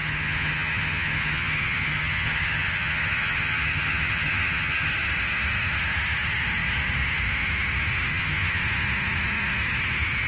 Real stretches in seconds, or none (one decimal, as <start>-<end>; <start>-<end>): 4.9-8.1; 8.6-10.3